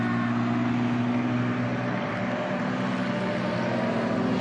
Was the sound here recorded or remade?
recorded